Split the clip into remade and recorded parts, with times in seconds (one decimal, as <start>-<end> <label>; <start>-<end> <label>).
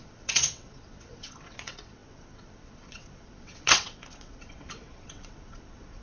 0.0-6.0 remade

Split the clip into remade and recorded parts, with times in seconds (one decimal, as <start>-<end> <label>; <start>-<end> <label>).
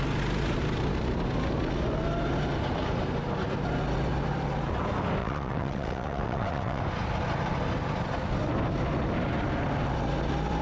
0.0-5.2 recorded; 5.2-6.8 remade; 6.8-10.6 recorded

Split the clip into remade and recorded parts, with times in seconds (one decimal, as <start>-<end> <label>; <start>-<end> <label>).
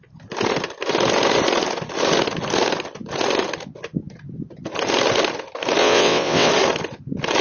0.0-5.8 recorded; 5.8-6.5 remade; 6.5-7.4 recorded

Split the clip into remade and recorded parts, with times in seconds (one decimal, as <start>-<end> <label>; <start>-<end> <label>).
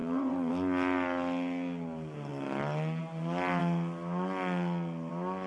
0.0-0.5 remade; 0.5-5.5 recorded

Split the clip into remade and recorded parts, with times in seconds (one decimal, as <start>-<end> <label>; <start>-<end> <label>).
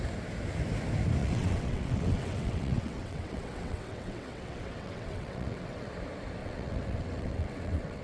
0.0-1.2 recorded; 1.2-5.9 remade; 5.9-6.4 recorded; 6.4-8.0 remade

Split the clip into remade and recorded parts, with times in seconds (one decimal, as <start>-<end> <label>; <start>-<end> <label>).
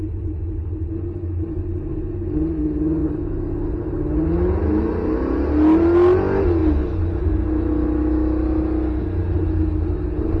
0.0-10.4 recorded